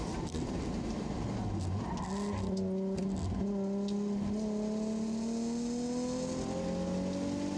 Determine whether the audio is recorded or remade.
recorded